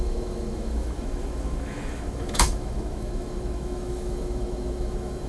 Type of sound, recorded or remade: remade